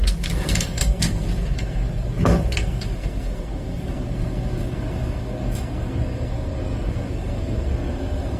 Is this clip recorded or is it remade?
remade